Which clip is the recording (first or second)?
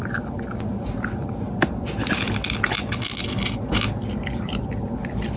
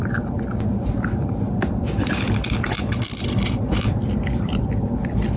first